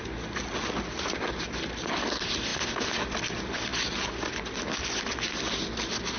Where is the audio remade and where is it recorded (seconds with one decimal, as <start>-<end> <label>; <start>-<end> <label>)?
0.0-6.2 recorded